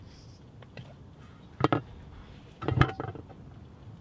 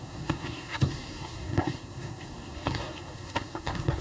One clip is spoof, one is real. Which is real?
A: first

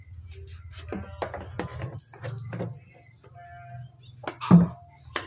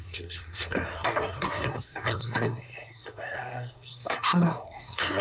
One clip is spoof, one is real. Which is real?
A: first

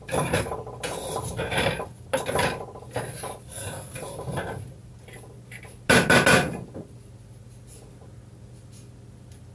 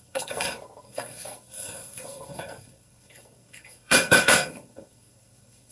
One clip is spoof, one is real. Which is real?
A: first